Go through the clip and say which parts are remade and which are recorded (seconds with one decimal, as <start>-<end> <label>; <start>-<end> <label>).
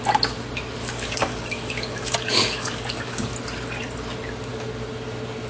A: 0.0-0.8 recorded; 0.8-3.3 remade; 3.3-5.5 recorded